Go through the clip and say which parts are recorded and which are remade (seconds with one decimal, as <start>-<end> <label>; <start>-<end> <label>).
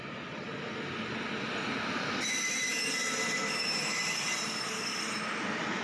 0.0-5.8 recorded